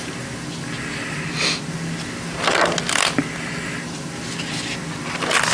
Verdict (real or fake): real